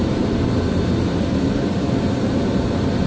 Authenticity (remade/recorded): remade